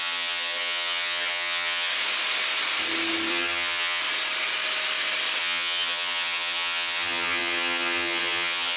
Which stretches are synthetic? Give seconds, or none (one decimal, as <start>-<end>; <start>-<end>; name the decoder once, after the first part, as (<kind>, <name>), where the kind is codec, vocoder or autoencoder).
0.0-1.9 (vocoder, HiFi-GAN); 3.3-4.0; 5.4-8.8